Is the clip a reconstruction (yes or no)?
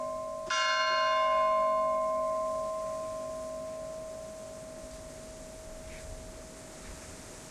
no